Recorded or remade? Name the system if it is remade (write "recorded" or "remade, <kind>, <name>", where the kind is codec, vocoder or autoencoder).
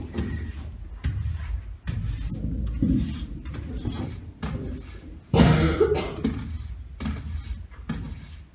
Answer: recorded